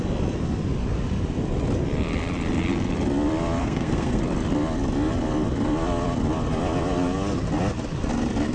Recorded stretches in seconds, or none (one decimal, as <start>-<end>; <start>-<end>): 0.0-3.6; 4.2-8.5